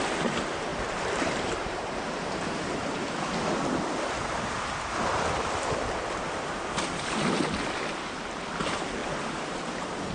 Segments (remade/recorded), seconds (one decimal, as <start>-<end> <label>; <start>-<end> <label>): 0.0-0.7 recorded; 0.7-3.4 remade; 3.4-10.1 recorded